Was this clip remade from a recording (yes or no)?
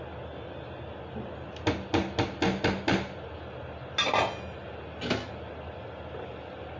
no